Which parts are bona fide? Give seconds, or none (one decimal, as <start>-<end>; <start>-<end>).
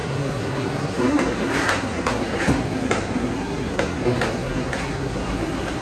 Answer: none